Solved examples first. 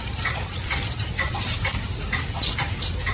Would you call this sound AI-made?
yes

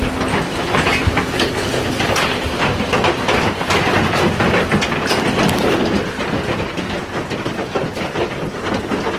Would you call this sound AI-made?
no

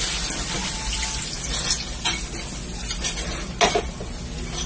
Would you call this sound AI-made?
no